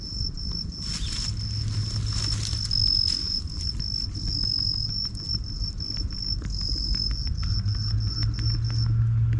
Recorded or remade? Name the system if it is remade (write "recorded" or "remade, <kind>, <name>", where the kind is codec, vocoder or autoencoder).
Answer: recorded